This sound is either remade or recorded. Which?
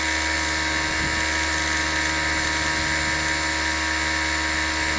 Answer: recorded